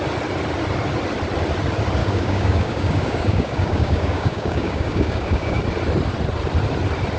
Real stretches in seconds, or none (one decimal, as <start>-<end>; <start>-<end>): 0.0-2.0; 5.6-7.2